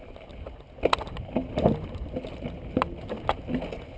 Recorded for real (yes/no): yes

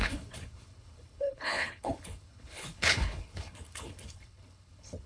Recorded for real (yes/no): no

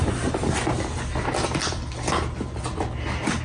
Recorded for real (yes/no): yes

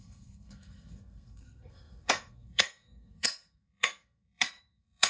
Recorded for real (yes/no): no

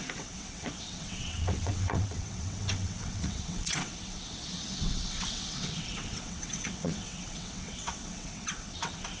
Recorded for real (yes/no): no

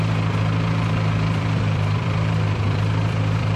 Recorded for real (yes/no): no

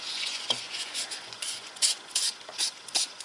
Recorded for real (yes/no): no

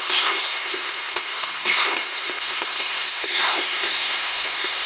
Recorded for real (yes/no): no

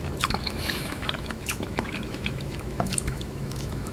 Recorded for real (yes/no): no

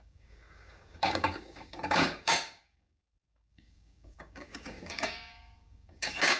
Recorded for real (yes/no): no